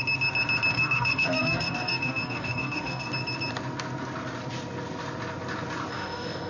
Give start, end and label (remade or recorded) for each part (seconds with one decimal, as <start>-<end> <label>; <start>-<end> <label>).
0.0-0.7 recorded; 0.7-3.1 remade; 3.1-5.9 recorded; 5.9-6.5 remade